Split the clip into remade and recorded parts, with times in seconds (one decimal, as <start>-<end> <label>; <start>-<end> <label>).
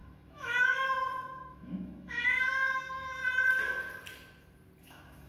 0.0-3.2 remade; 3.2-4.8 recorded; 4.8-5.3 remade